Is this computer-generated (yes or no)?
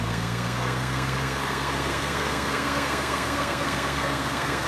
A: yes